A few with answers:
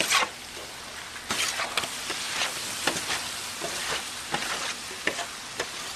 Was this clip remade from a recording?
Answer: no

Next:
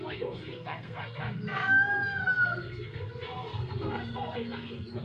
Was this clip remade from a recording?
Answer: yes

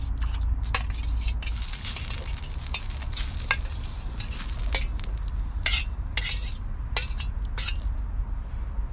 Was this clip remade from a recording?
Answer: no